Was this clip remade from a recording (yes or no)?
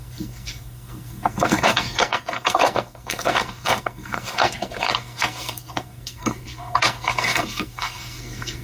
yes